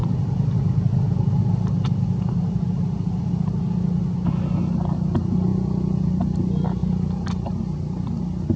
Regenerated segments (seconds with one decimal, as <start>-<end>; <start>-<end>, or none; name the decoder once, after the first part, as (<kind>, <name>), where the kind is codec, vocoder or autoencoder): 5.5-6.1 (vocoder, Vocos)